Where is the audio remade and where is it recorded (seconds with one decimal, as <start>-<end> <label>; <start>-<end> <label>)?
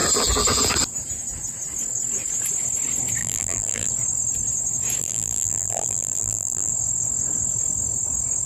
0.0-3.2 recorded; 3.2-3.9 remade; 3.9-5.0 recorded; 5.0-6.7 remade; 6.7-8.5 recorded